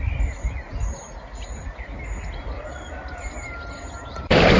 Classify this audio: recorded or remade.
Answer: recorded